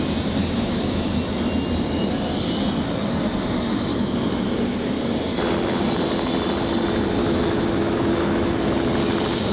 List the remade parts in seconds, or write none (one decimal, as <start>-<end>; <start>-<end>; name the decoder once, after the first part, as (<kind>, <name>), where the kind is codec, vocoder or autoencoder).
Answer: 0.4-1.3 (autoencoder, DAC-VAE); 3.9-5.0; 7.2-8.6